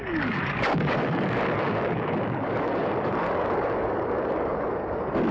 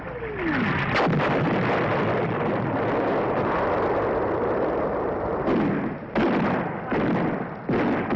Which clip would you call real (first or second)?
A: second